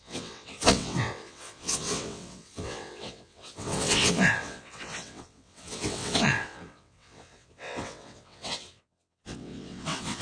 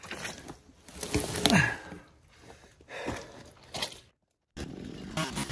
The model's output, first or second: first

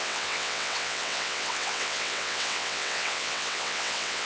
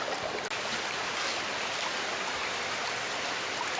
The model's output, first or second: first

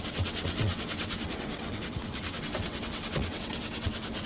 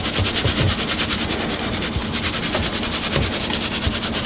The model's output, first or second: first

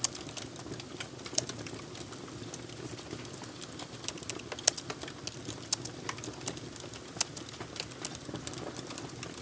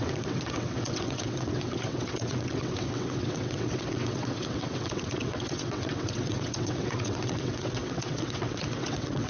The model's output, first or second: second